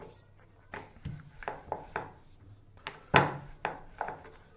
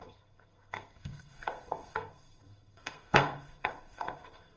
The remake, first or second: second